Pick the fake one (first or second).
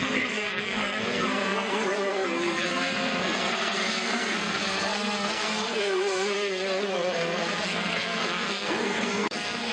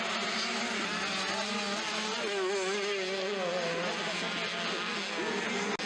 first